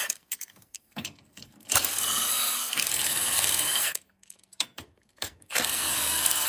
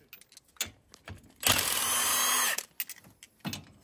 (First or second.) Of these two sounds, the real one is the second